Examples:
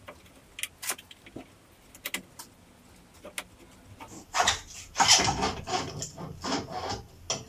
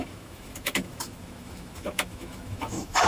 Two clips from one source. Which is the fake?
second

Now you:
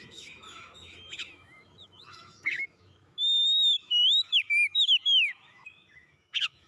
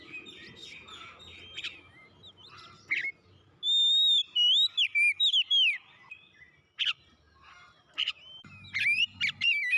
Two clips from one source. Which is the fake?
first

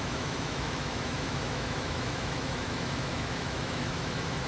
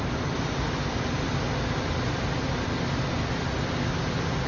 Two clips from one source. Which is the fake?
first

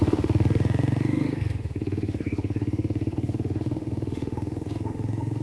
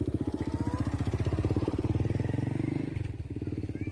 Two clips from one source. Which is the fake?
first